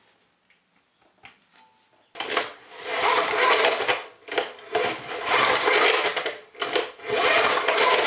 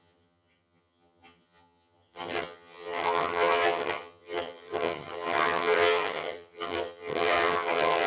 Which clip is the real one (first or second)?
first